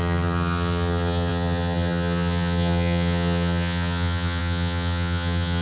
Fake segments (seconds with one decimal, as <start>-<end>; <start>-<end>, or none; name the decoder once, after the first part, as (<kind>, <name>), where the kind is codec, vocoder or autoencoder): 0.0-5.6 (vocoder, HiFi-GAN)